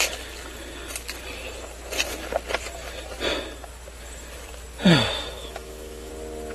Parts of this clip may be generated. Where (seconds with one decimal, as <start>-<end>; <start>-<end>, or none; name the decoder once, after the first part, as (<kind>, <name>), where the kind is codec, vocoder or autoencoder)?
5.0-6.1 (autoencoder, DAC-VAE)